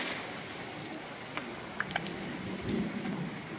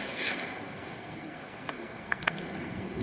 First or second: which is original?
first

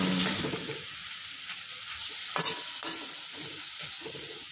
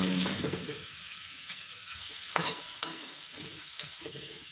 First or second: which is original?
first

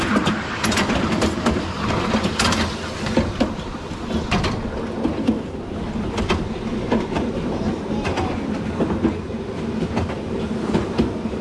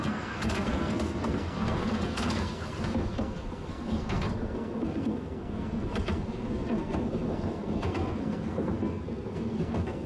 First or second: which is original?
first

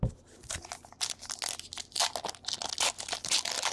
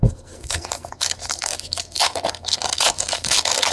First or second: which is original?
first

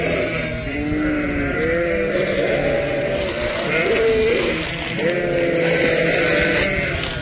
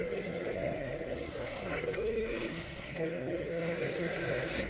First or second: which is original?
first